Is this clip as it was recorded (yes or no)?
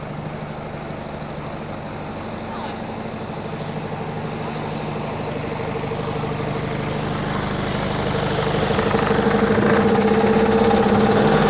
yes